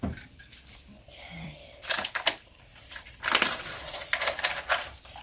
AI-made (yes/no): yes